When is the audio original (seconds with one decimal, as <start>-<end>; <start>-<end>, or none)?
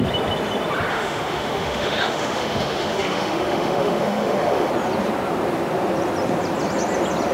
0.0-0.9; 4.7-7.3